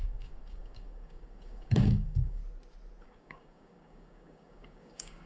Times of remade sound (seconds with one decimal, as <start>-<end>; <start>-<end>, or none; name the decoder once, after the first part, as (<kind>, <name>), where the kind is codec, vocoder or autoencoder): 0.0-2.4 (codec, DAC); 3.0-5.3